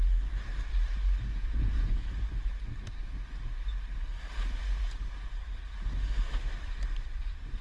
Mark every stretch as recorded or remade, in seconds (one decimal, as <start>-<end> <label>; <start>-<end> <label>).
0.0-1.3 recorded; 1.3-2.1 remade; 2.1-7.6 recorded